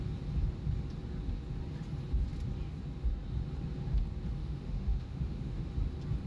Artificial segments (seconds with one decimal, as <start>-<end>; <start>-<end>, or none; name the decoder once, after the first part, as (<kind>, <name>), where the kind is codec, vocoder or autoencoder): 4.4-5.7 (autoencoder, DAC-VAE)